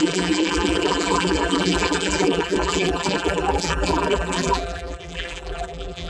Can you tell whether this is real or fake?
fake